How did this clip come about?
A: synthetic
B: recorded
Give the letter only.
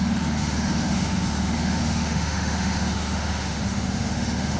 A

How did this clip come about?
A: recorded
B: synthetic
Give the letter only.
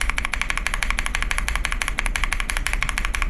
A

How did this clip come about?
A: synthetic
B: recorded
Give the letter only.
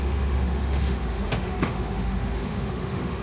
A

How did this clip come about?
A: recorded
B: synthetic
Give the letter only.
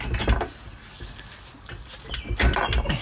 A